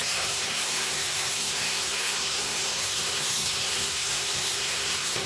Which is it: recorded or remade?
remade